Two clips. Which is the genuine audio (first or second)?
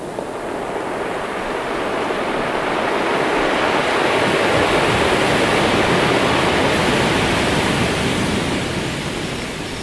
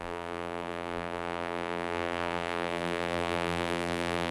first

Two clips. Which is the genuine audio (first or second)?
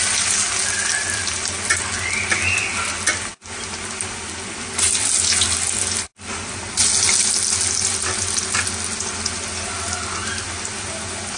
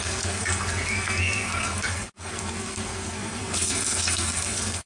first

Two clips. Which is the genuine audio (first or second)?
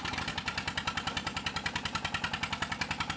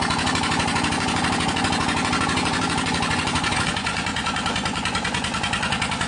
first